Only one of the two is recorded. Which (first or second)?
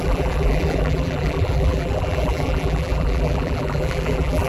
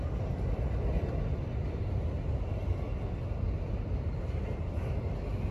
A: second